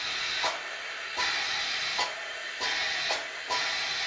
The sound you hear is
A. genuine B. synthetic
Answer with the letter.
A